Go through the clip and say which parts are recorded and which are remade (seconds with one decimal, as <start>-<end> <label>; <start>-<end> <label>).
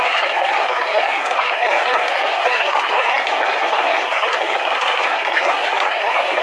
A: 0.0-6.4 remade